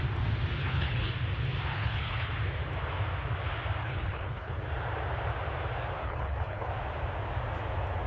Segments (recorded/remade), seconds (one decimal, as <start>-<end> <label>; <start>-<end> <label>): 0.0-0.6 recorded; 0.6-1.1 remade; 1.1-1.7 recorded; 1.7-2.3 remade; 2.3-3.8 recorded; 3.8-4.6 remade; 4.6-6.0 recorded; 6.0-6.7 remade; 6.7-8.1 recorded